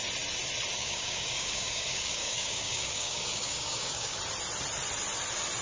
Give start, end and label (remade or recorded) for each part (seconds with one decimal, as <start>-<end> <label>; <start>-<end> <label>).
0.0-0.8 recorded; 0.8-4.2 remade; 4.2-5.6 recorded